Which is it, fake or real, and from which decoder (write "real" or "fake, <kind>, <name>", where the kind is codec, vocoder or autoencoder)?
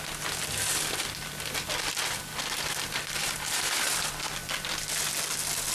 real